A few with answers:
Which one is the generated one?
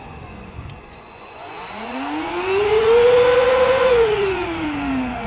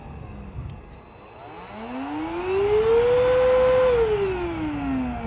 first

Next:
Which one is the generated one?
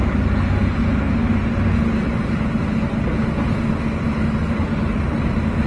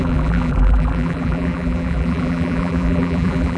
second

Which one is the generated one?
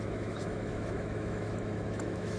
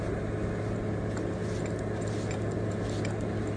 first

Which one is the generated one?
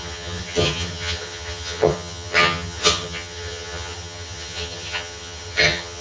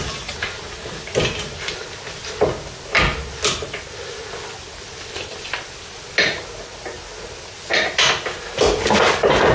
first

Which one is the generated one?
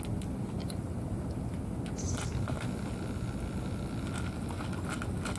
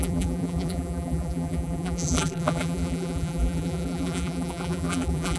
second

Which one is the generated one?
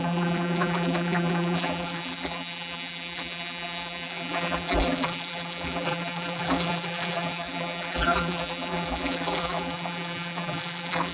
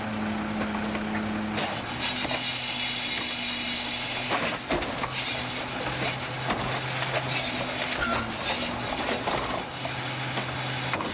first